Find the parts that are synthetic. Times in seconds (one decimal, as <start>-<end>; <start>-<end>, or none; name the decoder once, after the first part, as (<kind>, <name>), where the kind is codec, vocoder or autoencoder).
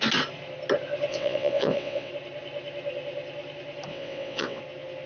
1.1-2.1 (vocoder, WaveNeXt); 3.9-4.6